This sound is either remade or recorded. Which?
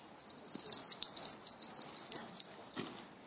remade